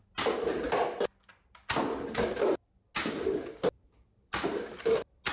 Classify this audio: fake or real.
real